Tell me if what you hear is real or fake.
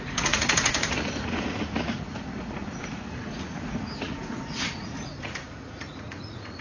fake